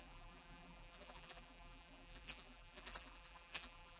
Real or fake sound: fake